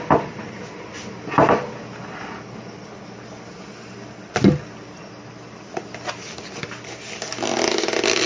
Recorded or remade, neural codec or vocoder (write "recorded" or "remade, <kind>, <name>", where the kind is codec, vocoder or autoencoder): recorded